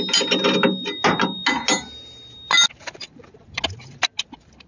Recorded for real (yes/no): yes